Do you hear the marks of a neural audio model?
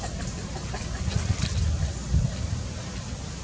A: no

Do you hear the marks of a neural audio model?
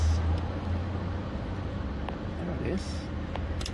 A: no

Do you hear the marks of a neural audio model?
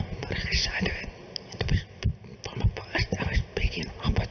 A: no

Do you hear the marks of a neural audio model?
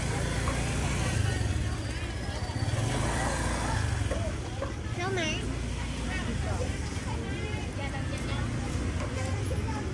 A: no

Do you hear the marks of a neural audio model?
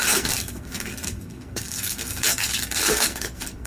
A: yes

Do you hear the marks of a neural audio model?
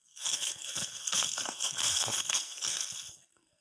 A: yes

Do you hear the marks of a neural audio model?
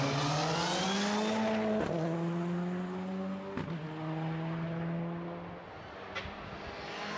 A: no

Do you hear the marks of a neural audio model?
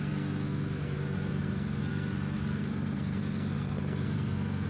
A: yes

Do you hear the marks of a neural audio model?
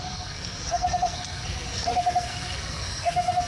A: yes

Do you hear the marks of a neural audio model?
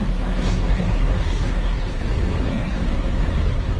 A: yes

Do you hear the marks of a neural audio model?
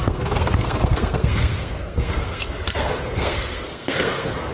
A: yes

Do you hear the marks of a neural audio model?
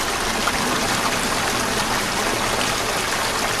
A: no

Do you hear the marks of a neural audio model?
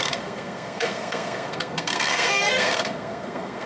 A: yes